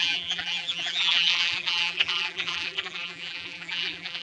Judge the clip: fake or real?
fake